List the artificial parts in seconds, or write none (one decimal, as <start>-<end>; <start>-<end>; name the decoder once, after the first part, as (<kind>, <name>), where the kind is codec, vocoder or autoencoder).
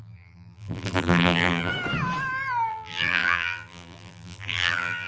0.0-1.7 (vocoder, BigVGAN v2); 2.7-5.1